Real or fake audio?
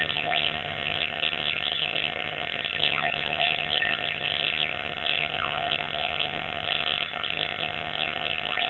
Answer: fake